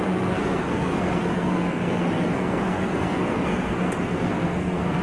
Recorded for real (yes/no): no